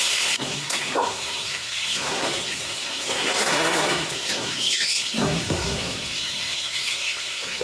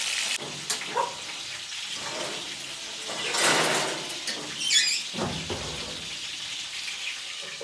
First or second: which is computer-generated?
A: first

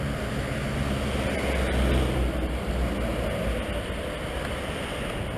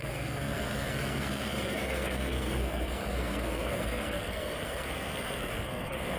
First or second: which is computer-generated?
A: second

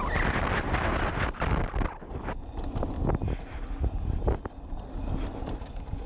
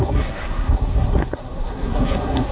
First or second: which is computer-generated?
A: second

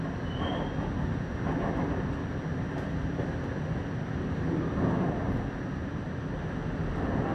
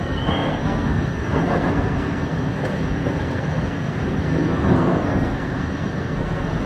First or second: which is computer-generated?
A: second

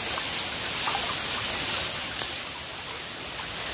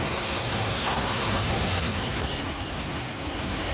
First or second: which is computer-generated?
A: second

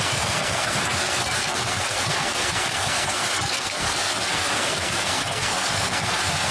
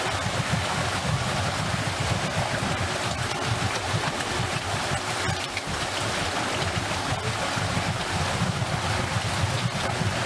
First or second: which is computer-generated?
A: first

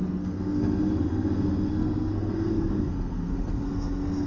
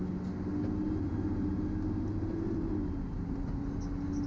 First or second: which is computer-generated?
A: first